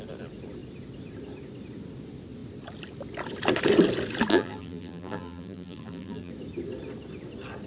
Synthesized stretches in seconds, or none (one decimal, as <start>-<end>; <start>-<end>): 4.3-6.3